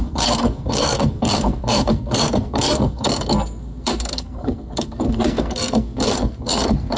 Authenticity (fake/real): fake